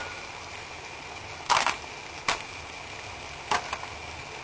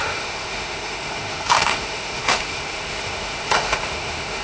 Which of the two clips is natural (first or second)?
first